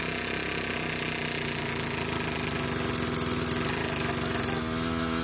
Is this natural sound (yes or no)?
yes